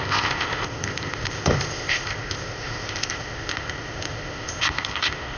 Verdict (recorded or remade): remade